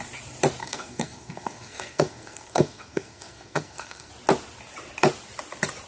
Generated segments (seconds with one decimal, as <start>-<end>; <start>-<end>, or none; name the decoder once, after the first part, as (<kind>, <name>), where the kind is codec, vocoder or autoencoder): 0.6-4.1 (codec, SNAC)